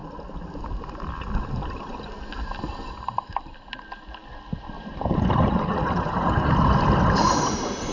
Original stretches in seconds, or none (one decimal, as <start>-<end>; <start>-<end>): 0.0-1.4